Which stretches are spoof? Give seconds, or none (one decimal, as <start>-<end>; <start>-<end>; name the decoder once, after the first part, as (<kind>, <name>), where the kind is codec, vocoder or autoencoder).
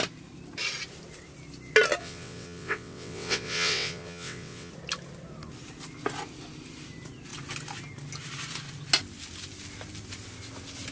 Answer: 2.0-4.7 (vocoder, WaveNeXt)